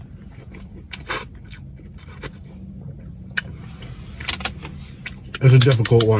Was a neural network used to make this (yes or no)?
no